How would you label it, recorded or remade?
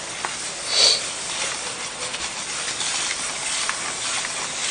recorded